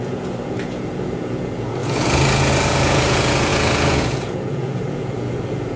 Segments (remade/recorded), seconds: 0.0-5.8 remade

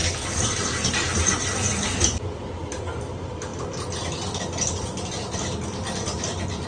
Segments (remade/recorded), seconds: 0.0-0.9 recorded; 0.9-3.5 remade; 3.5-6.0 recorded; 6.0-6.7 remade

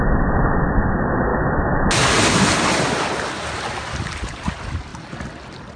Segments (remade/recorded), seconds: 0.0-5.8 recorded

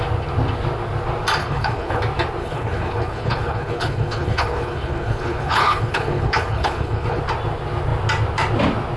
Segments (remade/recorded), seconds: 0.0-1.4 recorded; 1.4-2.0 remade; 2.0-2.4 recorded; 2.4-7.2 remade; 7.2-9.0 recorded

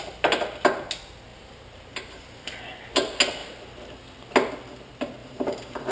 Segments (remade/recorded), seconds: 0.0-1.3 recorded; 1.3-2.6 remade; 2.6-5.2 recorded; 5.2-5.9 remade